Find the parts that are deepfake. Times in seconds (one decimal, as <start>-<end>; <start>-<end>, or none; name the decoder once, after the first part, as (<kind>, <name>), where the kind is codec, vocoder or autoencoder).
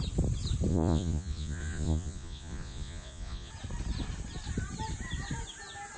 0.7-3.5 (vocoder, Vocos)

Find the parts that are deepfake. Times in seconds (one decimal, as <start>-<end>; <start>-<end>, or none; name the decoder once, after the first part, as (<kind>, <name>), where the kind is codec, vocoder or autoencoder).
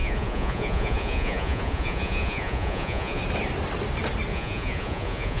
0.0-3.2 (vocoder, Vocos); 4.3-5.4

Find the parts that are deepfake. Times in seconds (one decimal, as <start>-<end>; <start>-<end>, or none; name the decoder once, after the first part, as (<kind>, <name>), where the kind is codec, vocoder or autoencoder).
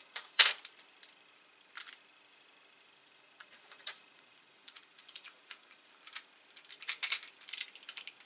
0.0-0.5 (vocoder, Vocos); 3.0-5.9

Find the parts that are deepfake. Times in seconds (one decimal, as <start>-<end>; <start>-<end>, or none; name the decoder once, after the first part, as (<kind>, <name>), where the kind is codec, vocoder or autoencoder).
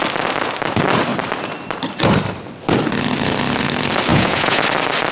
4.1-4.6 (vocoder, Vocos)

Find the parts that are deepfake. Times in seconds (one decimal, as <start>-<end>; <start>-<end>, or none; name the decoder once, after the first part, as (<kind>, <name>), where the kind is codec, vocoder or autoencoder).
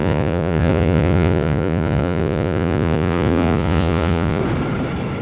0.0-4.4 (vocoder, Vocos)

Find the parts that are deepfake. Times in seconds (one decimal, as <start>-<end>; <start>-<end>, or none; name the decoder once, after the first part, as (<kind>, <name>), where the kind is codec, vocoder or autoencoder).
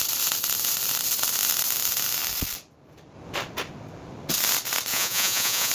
4.9-5.7 (vocoder, Vocos)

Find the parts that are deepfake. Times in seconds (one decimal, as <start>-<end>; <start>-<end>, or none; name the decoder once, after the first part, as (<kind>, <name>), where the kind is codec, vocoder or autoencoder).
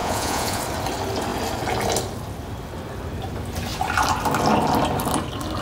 0.0-0.6 (vocoder, Vocos)